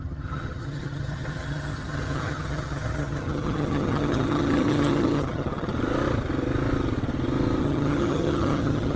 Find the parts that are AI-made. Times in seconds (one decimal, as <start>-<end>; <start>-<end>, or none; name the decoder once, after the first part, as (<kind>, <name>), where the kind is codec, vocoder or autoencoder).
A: 0.0-5.7 (vocoder, HiFi-GAN); 7.6-9.0